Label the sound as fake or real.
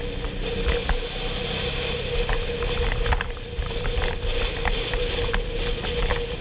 real